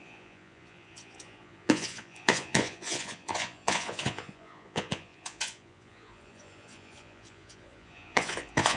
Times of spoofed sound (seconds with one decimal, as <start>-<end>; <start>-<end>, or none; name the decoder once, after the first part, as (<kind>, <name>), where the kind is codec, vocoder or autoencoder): 0.0-8.8 (vocoder, Vocos)